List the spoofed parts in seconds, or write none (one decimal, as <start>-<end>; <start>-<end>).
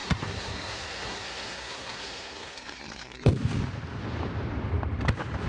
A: 0.0-3.3